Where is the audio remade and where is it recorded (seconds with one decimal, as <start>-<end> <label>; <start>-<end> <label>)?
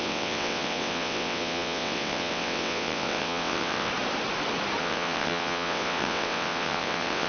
0.0-3.9 remade; 3.9-4.8 recorded; 4.8-7.3 remade